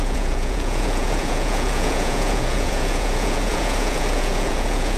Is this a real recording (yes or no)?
no